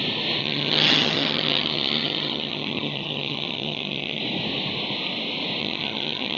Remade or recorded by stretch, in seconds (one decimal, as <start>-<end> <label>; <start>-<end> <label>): 0.0-0.4 recorded; 0.4-4.2 remade; 4.2-5.6 recorded; 5.6-6.4 remade